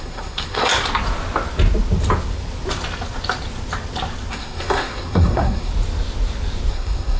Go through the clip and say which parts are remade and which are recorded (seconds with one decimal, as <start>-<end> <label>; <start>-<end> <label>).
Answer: 0.0-0.7 remade; 0.7-4.3 recorded; 4.3-5.7 remade; 5.7-6.7 recorded; 6.7-7.2 remade